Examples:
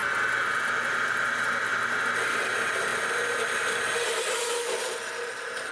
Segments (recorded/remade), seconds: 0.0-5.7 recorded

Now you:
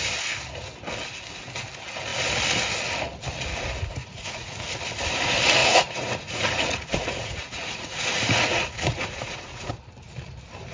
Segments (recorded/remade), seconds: 0.0-4.0 recorded; 4.0-4.6 remade; 4.6-5.6 recorded; 5.6-9.7 remade; 9.7-10.7 recorded

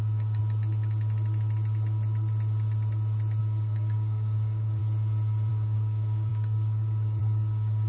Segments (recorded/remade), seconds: 0.0-0.4 remade; 0.4-3.4 recorded; 3.4-4.8 remade; 4.8-5.5 recorded; 5.5-7.9 remade

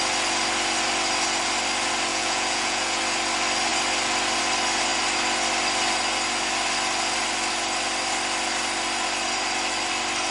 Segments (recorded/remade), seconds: 0.0-2.1 recorded; 2.1-3.0 remade; 3.0-10.3 recorded

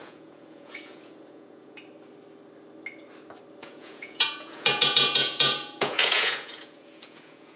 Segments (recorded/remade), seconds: 0.0-1.8 remade; 1.8-3.6 recorded; 3.6-7.6 remade

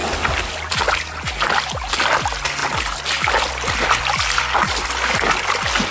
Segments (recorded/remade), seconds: 0.0-5.9 recorded